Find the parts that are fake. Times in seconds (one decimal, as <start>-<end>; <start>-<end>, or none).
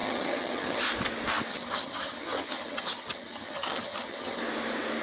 0.0-0.8; 1.5-4.4